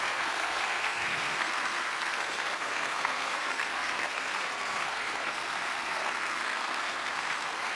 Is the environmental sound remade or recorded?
remade